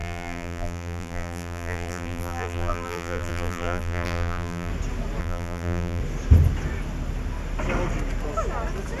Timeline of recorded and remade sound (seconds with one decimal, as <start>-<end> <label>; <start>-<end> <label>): 0.0-4.7 remade; 4.7-5.2 recorded; 5.2-6.0 remade; 6.0-9.0 recorded